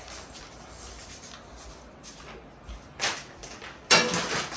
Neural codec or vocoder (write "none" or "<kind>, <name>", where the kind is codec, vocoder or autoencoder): none